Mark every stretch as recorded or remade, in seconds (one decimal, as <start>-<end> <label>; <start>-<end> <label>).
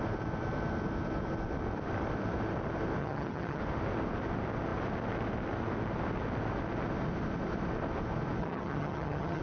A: 0.0-3.0 recorded; 3.0-3.6 remade; 3.6-8.4 recorded; 8.4-9.4 remade